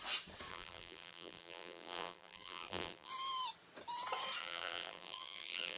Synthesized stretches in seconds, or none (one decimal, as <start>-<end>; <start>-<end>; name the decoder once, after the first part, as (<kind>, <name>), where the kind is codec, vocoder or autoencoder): 0.5-3.1 (vocoder, BigVGAN v2); 4.4-5.8